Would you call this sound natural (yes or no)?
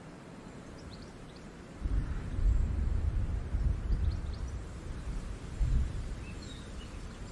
no